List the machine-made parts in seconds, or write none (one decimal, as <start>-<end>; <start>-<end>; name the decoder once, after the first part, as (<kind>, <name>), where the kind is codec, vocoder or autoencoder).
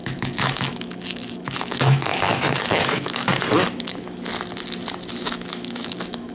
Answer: 0.0-3.3 (autoencoder, DAC-VAE); 3.9-4.3; 5.2-6.3